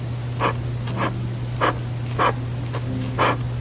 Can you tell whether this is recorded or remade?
recorded